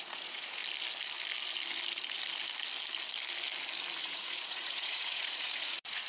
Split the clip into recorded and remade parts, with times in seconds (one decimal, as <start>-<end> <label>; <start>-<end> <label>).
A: 0.0-0.6 remade; 0.6-4.0 recorded; 4.0-6.1 remade